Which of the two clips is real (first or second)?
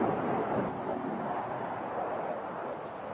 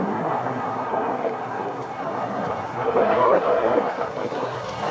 first